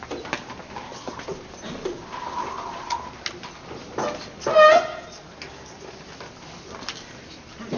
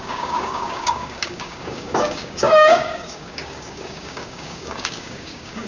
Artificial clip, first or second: second